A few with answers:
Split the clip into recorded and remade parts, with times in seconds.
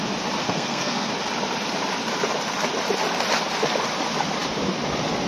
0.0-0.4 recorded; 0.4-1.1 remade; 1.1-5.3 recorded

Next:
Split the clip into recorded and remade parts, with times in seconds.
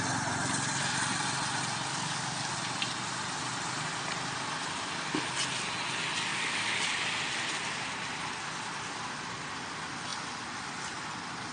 0.0-1.9 recorded; 1.9-2.5 remade; 2.5-6.3 recorded; 6.3-7.2 remade; 7.2-11.5 recorded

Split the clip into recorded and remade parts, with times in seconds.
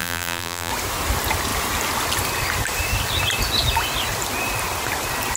0.0-0.7 remade; 0.7-5.4 recorded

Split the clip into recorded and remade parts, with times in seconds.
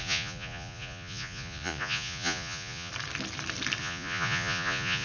0.0-2.9 remade; 2.9-3.8 recorded; 3.8-5.0 remade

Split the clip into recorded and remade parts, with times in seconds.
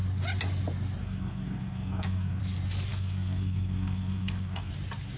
0.0-1.0 recorded; 1.0-2.4 remade; 2.4-2.9 recorded; 2.9-4.7 remade; 4.7-5.2 recorded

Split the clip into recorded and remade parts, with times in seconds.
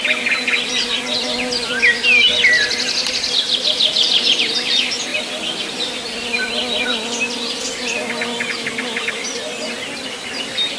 0.0-3.9 recorded; 3.9-4.5 remade; 4.5-10.8 recorded